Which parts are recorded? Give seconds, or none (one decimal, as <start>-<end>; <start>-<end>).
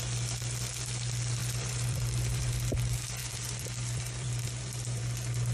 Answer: 0.0-1.4; 2.5-3.2; 5.0-5.5